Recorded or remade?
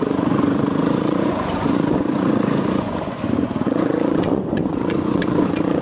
remade